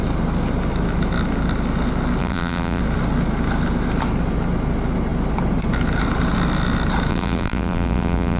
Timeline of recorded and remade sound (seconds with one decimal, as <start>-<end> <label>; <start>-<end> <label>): 0.0-2.2 recorded; 2.2-2.8 remade; 2.8-7.1 recorded; 7.1-8.4 remade